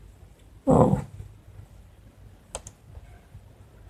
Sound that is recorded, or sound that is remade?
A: recorded